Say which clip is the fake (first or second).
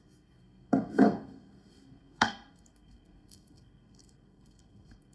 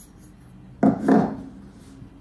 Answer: first